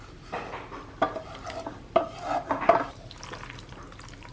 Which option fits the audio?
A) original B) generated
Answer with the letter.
A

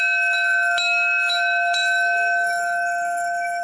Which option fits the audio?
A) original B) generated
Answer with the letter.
B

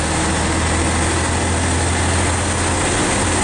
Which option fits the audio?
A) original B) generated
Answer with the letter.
A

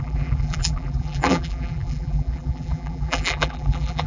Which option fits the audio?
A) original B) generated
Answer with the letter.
B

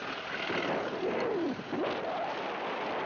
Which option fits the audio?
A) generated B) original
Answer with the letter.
B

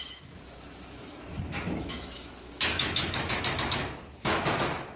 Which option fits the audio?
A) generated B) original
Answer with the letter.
A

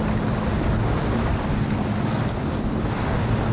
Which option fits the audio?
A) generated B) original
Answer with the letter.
B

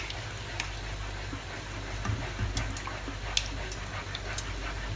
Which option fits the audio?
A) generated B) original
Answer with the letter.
B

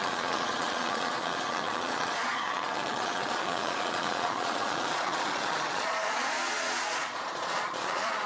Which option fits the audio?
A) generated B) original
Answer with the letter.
A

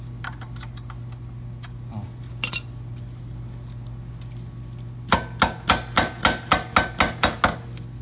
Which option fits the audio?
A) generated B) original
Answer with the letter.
B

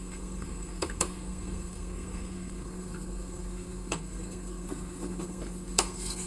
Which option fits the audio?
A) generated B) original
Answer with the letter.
A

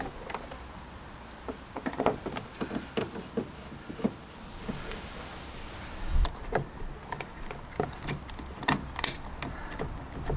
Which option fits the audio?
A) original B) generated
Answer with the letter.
A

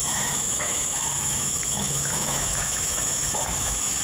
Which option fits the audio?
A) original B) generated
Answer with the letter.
B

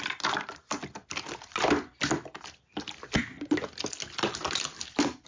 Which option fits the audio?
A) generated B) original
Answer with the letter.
B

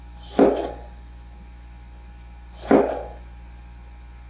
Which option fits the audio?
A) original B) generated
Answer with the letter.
A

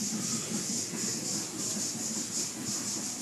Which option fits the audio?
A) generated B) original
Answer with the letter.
A